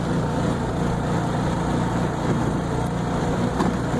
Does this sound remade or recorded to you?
recorded